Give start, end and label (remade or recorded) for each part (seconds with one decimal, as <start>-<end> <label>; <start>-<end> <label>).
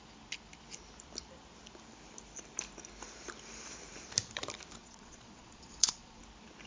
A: 0.0-4.8 recorded; 4.8-6.2 remade; 6.2-6.7 recorded